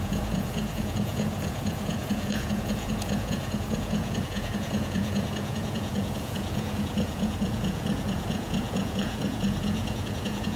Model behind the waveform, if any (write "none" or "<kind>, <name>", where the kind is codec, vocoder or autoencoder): vocoder, Vocos